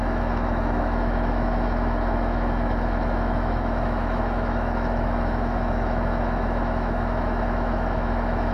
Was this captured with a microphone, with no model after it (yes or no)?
no